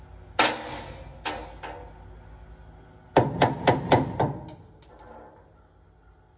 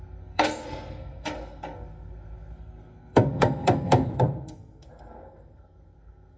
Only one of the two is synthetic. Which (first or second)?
second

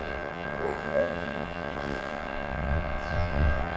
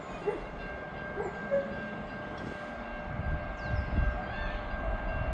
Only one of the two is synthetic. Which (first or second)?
first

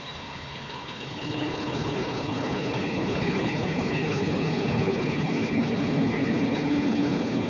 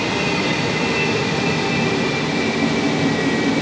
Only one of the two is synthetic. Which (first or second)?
first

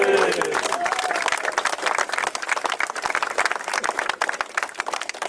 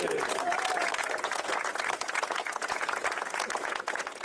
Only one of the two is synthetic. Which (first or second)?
second